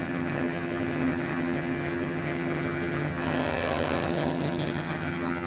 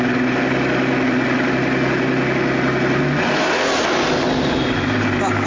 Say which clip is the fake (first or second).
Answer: first